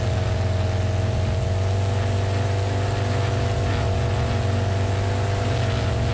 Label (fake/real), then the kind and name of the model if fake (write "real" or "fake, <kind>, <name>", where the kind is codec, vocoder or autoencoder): real